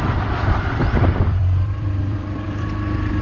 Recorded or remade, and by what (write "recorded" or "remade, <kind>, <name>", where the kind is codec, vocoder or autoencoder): remade, vocoder, BigVGAN v2